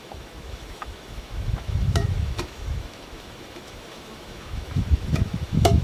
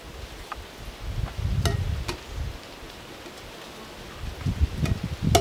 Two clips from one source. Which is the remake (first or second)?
first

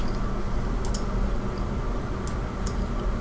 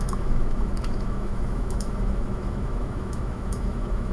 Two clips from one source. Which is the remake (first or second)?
second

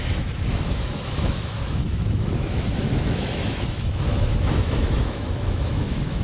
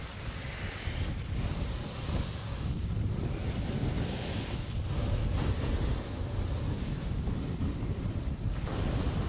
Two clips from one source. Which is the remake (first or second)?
first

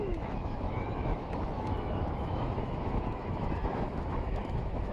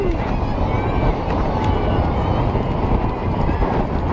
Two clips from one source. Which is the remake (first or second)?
first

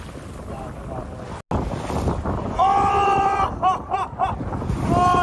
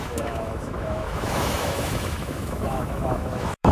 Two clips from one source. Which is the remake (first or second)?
second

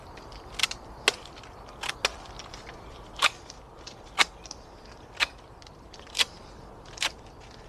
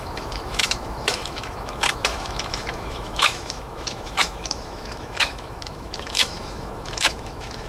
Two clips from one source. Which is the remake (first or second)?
second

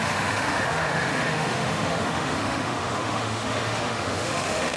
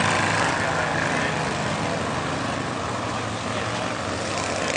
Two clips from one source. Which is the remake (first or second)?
first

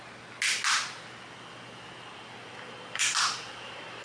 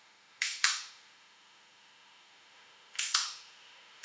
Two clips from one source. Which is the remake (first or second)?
second